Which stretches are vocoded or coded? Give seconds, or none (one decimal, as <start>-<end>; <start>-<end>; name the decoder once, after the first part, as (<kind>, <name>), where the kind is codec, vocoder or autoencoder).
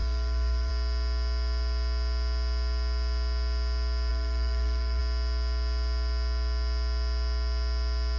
0.0-0.7 (codec, DAC); 4.1-5.0